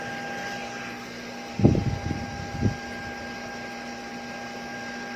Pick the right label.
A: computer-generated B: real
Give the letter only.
B